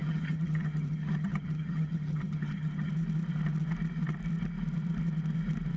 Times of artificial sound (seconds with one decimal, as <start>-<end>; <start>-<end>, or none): 0.0-2.9